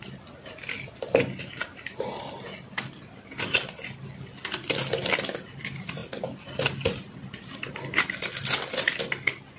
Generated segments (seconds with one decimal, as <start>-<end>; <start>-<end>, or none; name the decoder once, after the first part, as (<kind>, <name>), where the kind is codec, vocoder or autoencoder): none